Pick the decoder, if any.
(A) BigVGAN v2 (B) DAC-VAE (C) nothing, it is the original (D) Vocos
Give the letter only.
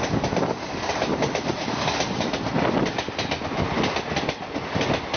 C